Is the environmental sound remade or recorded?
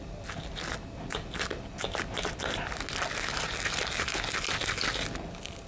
recorded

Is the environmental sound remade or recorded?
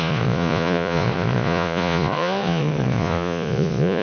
remade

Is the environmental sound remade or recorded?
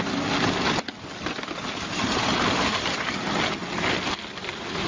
recorded